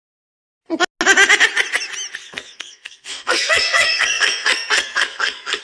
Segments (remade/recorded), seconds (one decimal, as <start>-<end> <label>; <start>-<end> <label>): 0.0-2.2 recorded; 2.2-5.6 remade